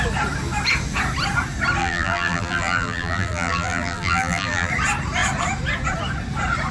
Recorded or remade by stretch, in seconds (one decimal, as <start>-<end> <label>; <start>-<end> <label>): 0.0-1.8 recorded; 1.8-4.7 remade; 4.7-6.7 recorded